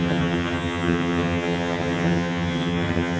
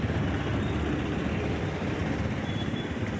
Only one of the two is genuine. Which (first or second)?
second